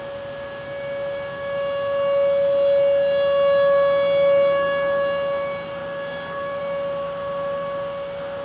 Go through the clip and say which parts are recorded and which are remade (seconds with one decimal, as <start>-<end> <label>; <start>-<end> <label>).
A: 0.0-5.8 recorded; 5.8-6.6 remade; 6.6-8.4 recorded